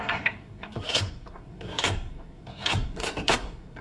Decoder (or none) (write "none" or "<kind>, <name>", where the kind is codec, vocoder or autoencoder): codec, SNAC